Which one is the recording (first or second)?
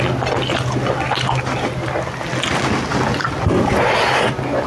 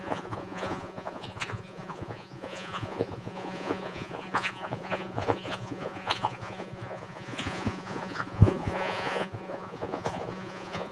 first